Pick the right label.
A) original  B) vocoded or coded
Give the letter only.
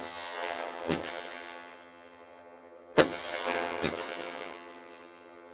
B